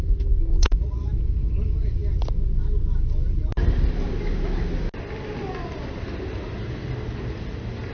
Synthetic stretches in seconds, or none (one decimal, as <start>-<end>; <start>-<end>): 0.6-1.1